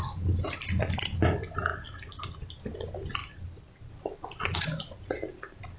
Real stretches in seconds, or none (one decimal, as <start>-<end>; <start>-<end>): 0.0-5.8